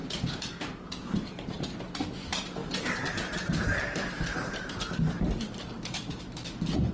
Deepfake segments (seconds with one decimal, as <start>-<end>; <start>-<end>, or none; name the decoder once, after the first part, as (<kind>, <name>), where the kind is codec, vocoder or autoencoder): 2.6-6.2 (vocoder, BigVGAN v2)